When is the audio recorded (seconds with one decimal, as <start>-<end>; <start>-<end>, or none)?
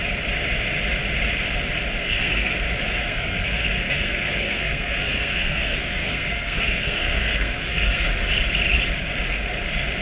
0.0-2.0; 2.5-3.0; 8.1-10.0